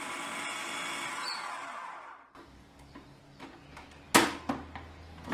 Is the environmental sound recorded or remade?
recorded